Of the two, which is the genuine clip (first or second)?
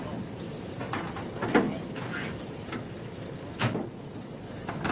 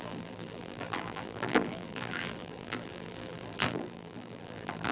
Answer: first